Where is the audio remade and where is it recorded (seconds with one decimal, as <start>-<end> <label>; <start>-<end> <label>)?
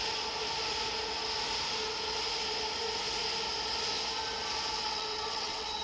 0.0-4.8 recorded; 4.8-5.8 remade